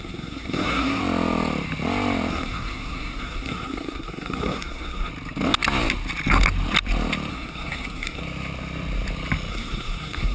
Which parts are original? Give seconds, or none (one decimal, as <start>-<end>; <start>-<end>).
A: 1.0-2.3; 5.1-7.3; 8.2-9.5